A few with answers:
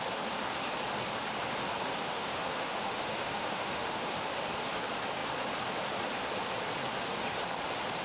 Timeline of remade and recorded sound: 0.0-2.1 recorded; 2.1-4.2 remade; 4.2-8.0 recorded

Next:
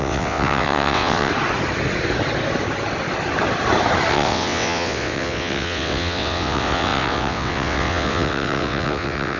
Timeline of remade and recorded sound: 0.0-1.3 remade; 1.3-4.1 recorded; 4.1-9.4 remade

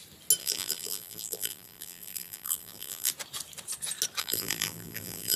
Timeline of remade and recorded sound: 0.0-0.4 recorded; 0.4-3.1 remade; 3.1-4.2 recorded; 4.2-5.4 remade

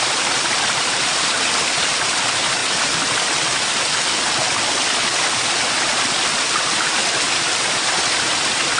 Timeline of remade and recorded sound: 0.0-2.6 remade; 2.6-5.7 recorded; 5.7-7.0 remade; 7.0-7.6 recorded; 7.6-8.8 remade

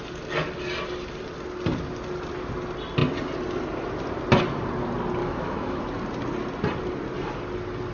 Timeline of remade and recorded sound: 0.0-5.2 recorded; 5.2-5.8 remade; 5.8-7.9 recorded

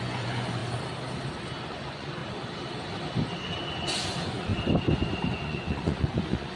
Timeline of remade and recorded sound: 0.0-0.6 remade; 0.6-1.6 recorded; 1.6-2.2 remade; 2.2-3.7 recorded; 3.7-4.5 remade; 4.5-5.2 recorded; 5.2-6.6 remade